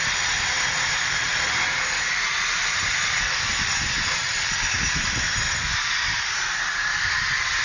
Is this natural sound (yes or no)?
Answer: yes